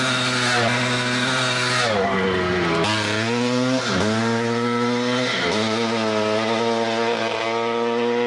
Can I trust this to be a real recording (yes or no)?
yes